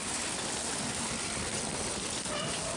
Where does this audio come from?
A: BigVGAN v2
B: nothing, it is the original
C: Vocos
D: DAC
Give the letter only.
B